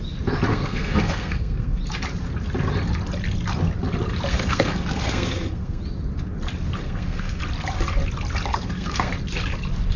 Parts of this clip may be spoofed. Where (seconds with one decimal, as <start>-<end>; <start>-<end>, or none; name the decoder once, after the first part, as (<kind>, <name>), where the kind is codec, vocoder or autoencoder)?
0.5-1.8 (codec, SNAC); 4.3-5.8; 6.8-7.4; 8.5-9.1